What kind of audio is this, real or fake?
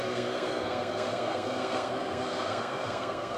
fake